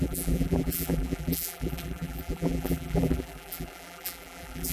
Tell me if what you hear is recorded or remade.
remade